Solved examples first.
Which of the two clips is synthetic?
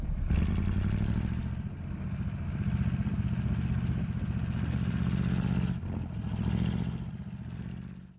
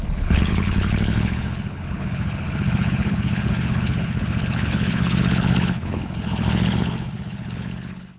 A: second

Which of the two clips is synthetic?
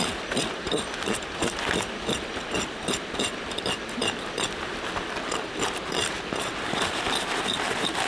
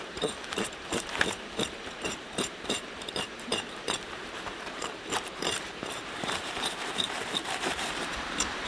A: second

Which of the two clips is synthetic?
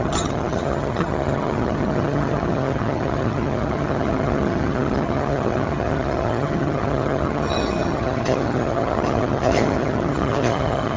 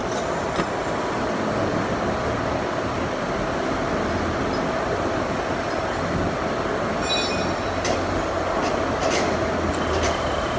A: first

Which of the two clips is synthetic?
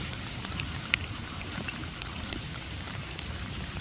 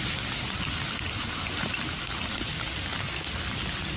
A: first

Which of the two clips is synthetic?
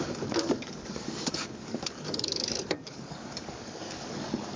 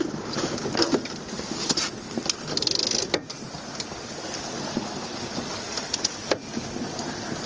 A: first